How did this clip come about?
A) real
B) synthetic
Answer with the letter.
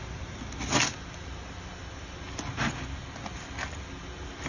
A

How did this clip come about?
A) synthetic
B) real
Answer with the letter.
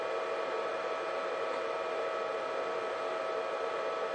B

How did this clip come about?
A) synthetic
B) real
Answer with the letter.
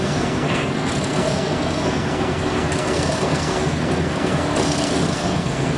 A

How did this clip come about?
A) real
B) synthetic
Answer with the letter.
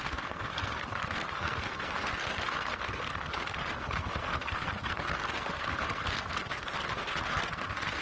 B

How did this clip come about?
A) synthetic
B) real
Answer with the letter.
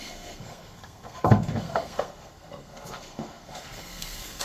A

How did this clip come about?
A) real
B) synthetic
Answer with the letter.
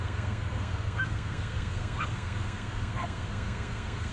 B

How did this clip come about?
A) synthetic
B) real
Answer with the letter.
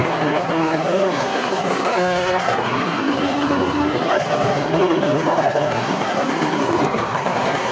A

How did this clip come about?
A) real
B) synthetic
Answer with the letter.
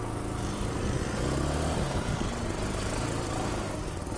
A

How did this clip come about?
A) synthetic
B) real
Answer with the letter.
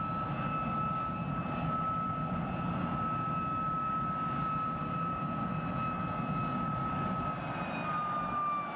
B